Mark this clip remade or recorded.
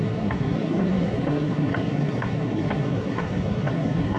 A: remade